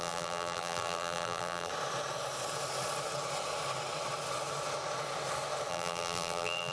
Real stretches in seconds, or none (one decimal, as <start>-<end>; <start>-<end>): 1.7-5.7

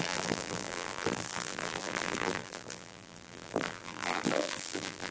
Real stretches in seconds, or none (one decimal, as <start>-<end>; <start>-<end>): none

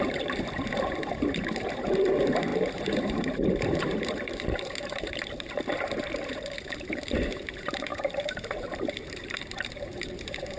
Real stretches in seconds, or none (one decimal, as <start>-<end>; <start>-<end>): none

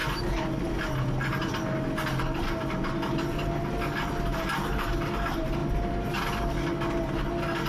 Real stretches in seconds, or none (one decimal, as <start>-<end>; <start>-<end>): 0.0-4.3; 4.9-7.7

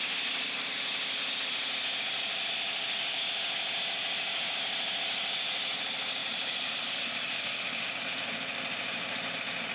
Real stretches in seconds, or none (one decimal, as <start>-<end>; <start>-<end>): 0.0-6.2; 7.6-9.7

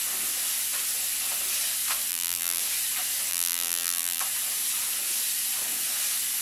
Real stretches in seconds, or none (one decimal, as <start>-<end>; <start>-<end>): 0.0-2.1; 2.6-3.3; 4.2-6.4

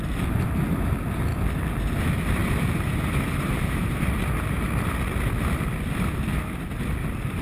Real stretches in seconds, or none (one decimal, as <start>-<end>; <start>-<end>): 0.0-2.4; 4.0-7.4